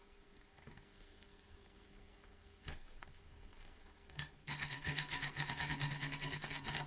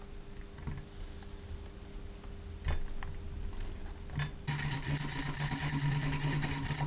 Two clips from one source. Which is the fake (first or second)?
first